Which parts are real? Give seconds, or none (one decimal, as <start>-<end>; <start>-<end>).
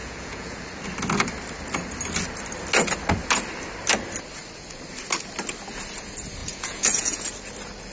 0.6-6.4; 7.3-7.9